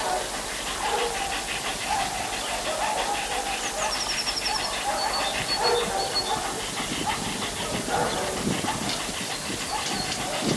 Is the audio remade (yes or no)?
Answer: no